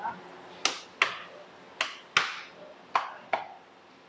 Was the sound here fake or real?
real